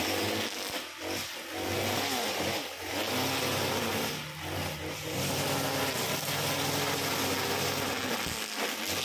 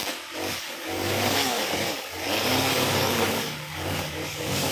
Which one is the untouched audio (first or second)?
first